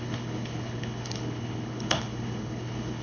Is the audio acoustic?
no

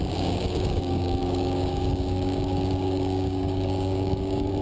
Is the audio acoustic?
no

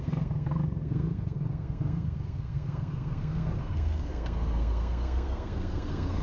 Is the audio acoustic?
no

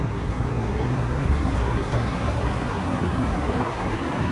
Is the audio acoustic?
no